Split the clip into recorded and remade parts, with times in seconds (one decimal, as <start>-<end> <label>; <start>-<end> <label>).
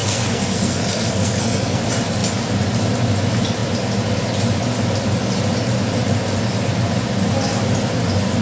0.0-1.8 remade; 1.8-8.4 recorded